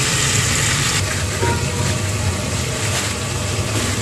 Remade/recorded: remade